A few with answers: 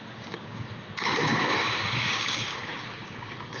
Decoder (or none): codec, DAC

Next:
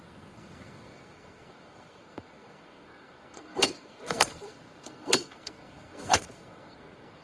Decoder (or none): codec, SNAC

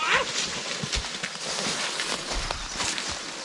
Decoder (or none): none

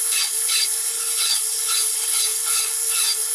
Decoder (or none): codec, HILCodec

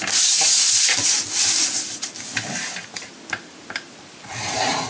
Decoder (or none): none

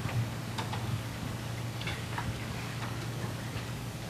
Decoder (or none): codec, DAC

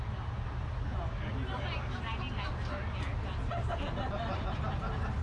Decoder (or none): none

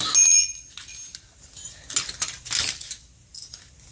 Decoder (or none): none